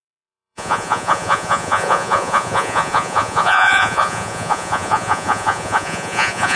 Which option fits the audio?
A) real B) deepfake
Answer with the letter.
B